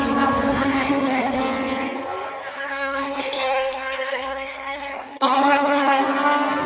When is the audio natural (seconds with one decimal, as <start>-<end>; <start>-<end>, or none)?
0.0-0.5; 1.4-2.5; 6.0-6.7